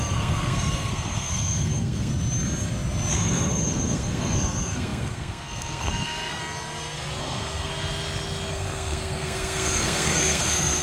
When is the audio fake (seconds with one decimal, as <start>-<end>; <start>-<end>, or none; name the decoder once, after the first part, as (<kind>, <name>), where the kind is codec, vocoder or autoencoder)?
0.0-2.1 (codec, SNAC); 3.1-6.4; 7.2-7.7; 8.5-10.8